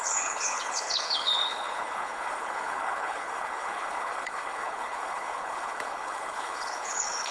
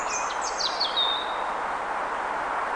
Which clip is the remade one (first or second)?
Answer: first